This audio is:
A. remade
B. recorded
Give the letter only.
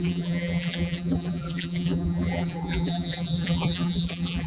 A